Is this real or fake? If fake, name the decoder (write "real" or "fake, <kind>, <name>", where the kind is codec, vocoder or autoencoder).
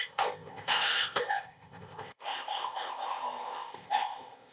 fake, codec, ZipCodec